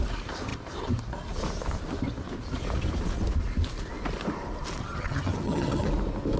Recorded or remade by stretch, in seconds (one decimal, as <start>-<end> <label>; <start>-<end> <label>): 0.0-4.8 recorded; 4.8-5.9 remade; 5.9-6.4 recorded